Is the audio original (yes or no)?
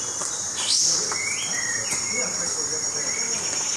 yes